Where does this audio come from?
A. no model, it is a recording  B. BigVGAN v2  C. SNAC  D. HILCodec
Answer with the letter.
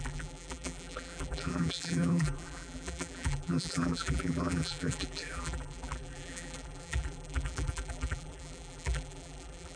B